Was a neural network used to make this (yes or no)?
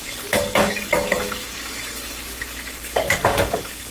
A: yes